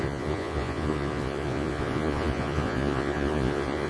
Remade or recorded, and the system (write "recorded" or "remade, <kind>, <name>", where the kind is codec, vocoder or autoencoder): remade, vocoder, Vocos